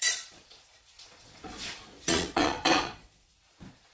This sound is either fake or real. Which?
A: fake